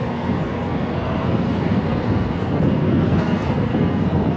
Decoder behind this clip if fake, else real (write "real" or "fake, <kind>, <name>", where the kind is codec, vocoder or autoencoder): fake, codec, SNAC